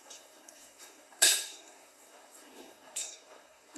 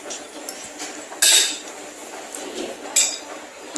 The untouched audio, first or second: second